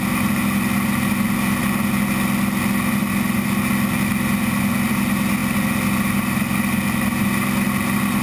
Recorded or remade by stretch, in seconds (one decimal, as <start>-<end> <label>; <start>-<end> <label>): 0.0-8.2 recorded